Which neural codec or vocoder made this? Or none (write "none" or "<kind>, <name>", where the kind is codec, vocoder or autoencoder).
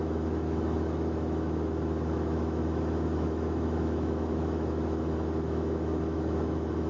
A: autoencoder, DAC-VAE